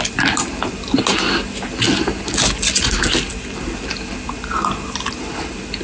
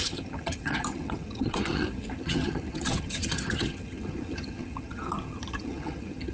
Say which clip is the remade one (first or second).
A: second